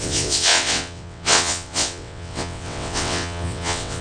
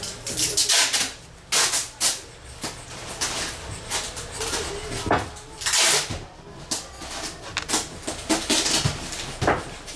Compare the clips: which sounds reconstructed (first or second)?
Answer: first